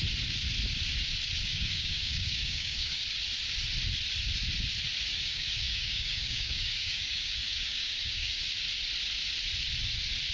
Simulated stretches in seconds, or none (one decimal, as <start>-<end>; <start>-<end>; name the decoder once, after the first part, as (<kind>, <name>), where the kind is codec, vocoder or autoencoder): 1.5-3.0 (codec, DAC); 5.1-8.4